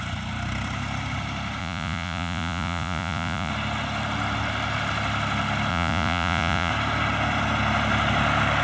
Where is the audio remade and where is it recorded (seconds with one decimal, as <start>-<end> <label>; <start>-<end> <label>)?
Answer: 0.0-1.6 recorded; 1.6-3.5 remade; 3.5-5.7 recorded; 5.7-6.7 remade; 6.7-8.6 recorded